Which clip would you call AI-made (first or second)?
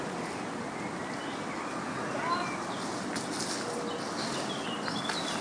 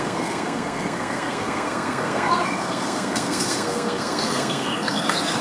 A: second